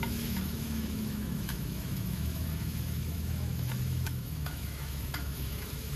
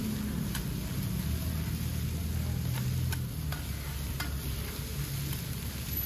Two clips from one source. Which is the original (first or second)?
second